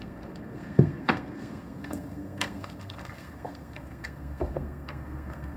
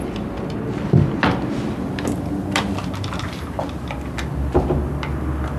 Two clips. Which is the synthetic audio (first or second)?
first